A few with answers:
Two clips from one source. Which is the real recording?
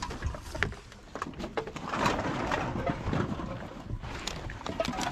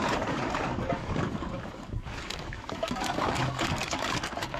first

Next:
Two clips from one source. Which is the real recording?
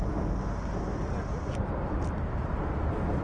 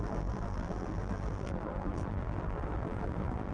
first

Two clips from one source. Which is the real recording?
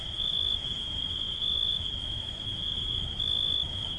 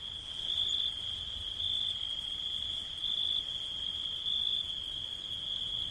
second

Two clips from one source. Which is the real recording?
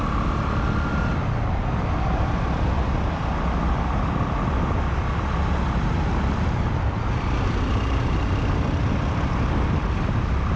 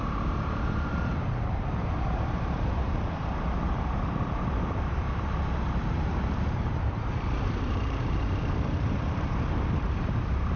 first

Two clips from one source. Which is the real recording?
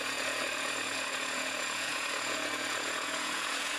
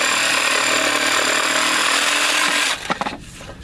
second